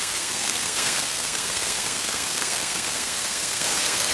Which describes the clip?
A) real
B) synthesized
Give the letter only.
B